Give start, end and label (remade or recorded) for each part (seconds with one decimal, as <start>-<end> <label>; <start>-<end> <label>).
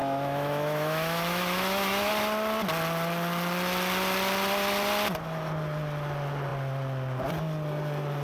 0.0-2.1 remade; 2.1-8.2 recorded